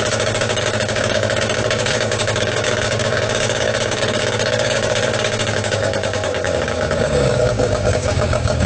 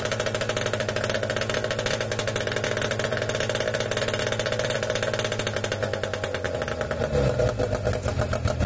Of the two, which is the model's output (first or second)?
first